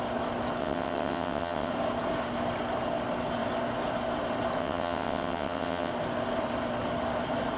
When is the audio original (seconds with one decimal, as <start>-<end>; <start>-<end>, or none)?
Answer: 0.0-0.6; 1.7-4.6; 5.9-7.6